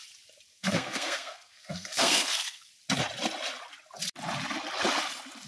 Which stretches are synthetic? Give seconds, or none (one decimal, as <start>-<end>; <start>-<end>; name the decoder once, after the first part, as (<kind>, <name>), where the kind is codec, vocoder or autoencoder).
0.5-2.7 (codec, SNAC)